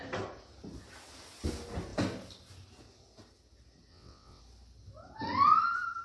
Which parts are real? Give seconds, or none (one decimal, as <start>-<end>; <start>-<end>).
0.0-3.9; 4.4-6.0